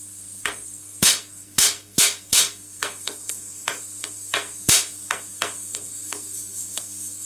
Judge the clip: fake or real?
fake